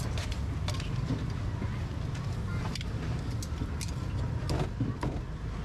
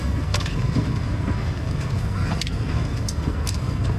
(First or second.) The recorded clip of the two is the first